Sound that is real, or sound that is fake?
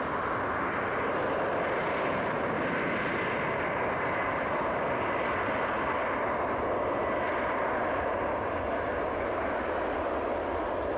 real